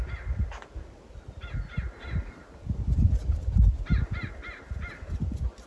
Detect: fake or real real